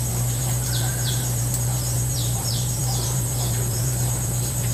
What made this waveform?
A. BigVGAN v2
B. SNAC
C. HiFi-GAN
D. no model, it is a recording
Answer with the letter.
A